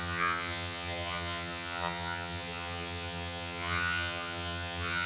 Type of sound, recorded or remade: remade